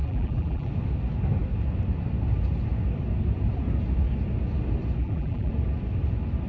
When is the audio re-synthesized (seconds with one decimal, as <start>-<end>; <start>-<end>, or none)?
0.0-0.7; 5.0-5.5